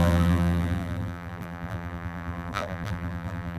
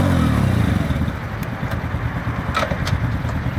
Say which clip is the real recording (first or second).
second